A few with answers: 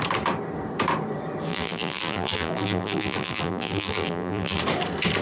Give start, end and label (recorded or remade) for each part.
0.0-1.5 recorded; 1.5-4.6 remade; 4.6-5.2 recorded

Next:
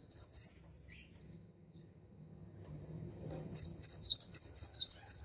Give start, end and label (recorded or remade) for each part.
0.0-0.4 remade; 0.4-1.2 recorded; 1.2-5.2 remade

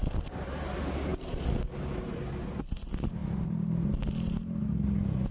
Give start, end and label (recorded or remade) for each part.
0.0-5.3 recorded

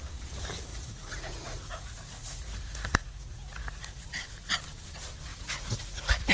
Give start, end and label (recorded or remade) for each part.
0.0-0.7 recorded; 0.7-4.5 remade; 4.5-5.3 recorded; 5.3-6.3 remade

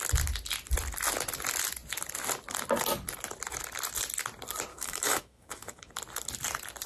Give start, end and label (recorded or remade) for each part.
0.0-4.7 recorded; 4.7-5.9 remade; 5.9-6.9 recorded

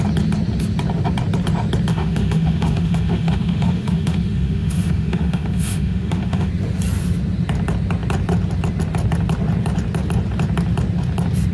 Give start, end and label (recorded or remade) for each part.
0.0-1.9 recorded; 1.9-6.5 remade; 6.5-11.5 recorded

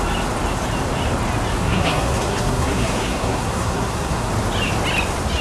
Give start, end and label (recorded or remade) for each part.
0.0-1.6 recorded; 1.6-4.3 remade; 4.3-5.4 recorded